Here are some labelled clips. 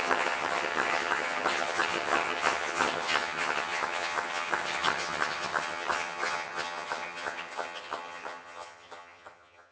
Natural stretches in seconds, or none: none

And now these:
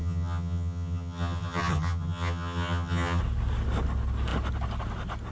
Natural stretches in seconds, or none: 3.2-5.3

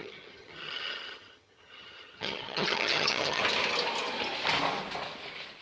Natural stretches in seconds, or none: 3.4-5.6

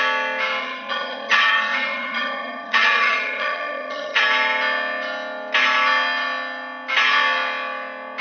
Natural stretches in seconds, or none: 0.0-0.6; 4.2-8.2

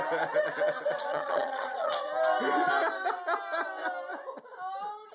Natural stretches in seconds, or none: 0.0-1.1; 1.9-5.1

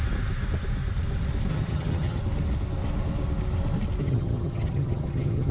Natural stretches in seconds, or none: 0.0-1.5; 2.2-4.0

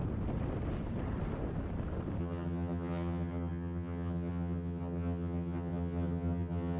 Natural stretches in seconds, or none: 0.0-2.2

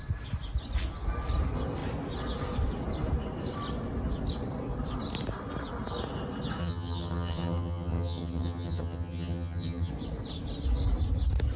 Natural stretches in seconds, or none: 0.0-6.6; 9.9-11.6